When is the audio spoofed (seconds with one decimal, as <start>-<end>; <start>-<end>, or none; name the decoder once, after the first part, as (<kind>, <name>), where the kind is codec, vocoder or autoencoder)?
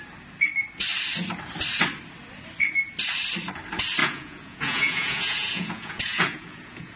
4.0-7.0 (vocoder, Vocos)